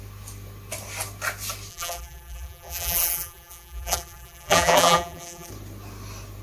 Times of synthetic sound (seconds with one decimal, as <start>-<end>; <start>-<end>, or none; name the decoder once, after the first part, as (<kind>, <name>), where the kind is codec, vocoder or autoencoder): 1.7-5.5 (vocoder, BigVGAN v2)